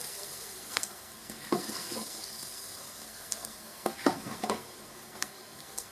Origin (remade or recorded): remade